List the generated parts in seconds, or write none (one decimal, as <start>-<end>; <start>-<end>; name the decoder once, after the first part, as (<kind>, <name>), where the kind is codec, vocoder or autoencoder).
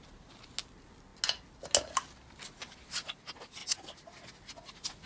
none